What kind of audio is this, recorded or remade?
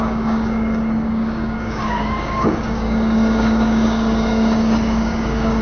remade